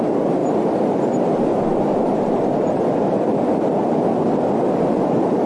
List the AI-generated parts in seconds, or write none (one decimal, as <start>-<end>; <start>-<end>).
none